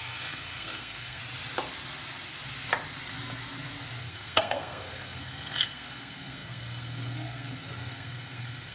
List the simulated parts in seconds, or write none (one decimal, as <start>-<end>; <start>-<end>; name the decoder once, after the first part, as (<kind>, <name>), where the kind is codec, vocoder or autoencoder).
0.0-1.2 (codec, SNAC); 4.0-8.7